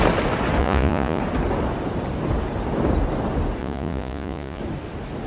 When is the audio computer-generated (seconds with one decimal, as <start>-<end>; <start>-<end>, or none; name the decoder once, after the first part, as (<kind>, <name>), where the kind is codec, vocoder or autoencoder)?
0.6-1.2 (vocoder, Vocos); 3.6-4.6